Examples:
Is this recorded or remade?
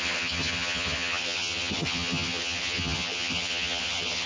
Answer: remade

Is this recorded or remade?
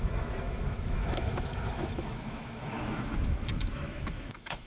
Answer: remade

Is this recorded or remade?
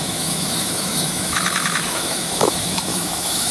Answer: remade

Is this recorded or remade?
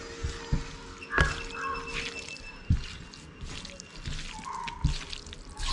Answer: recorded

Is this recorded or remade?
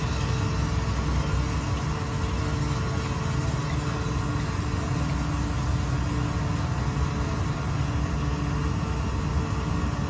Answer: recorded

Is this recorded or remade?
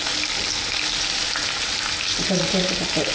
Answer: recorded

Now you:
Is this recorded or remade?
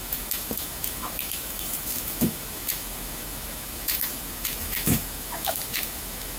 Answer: remade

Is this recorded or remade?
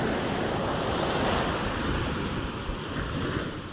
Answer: recorded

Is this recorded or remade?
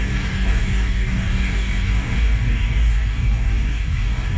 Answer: remade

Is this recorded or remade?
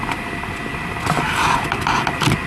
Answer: recorded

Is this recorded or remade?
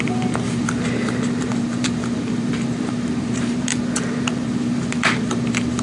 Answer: remade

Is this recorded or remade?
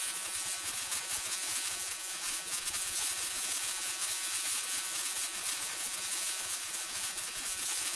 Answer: remade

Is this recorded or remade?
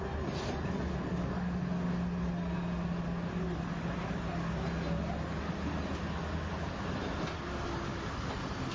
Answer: recorded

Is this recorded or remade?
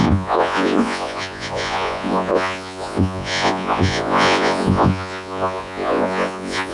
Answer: remade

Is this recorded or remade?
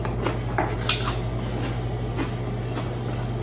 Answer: recorded